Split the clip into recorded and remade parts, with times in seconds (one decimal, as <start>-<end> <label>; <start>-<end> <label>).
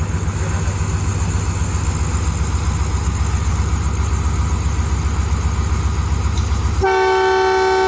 0.0-7.9 recorded